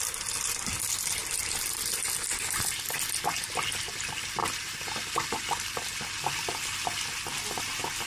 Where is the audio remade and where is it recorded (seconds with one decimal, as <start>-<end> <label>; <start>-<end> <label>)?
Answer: 0.0-8.1 recorded